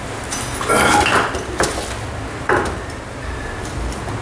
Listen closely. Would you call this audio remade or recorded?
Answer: recorded